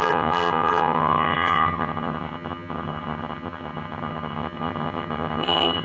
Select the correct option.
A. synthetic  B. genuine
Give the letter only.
A